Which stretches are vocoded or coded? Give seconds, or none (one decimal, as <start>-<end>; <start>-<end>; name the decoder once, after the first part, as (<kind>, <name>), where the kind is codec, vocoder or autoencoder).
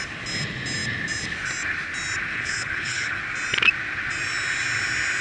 2.3-3.2 (codec, HILCodec)